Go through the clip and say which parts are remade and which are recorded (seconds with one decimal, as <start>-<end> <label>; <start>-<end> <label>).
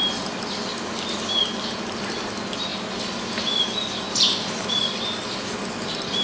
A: 0.0-6.2 recorded